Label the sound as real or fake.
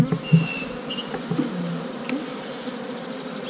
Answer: real